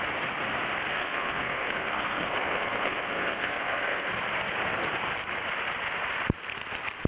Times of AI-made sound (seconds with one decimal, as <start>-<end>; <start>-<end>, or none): 0.9-4.1